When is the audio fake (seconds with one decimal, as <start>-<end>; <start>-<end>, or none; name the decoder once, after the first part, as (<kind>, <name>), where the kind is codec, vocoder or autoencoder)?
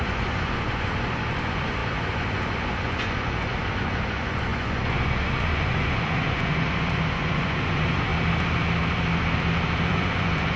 0.0-8.1 (vocoder, Vocos); 9.9-10.6